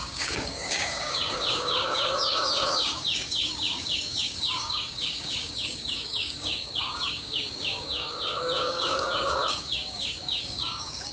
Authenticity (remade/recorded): remade